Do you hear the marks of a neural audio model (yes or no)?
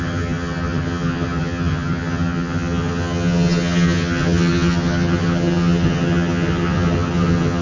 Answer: yes